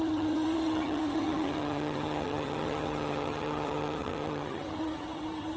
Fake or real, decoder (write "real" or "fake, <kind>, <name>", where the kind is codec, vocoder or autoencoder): fake, vocoder, HiFi-GAN